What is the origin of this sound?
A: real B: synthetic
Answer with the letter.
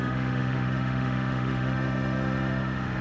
B